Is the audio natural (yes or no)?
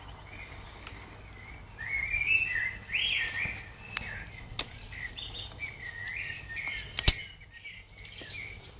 yes